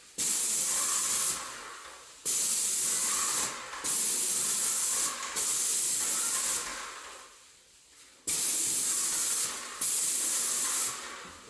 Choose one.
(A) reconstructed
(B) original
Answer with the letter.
B